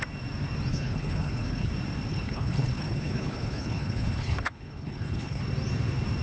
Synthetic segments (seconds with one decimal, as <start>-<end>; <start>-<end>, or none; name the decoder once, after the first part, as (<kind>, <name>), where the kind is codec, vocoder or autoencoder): 0.7-1.7 (codec, HILCodec); 2.1-5.4